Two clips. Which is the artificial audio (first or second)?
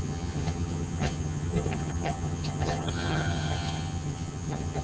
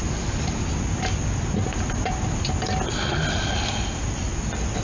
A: first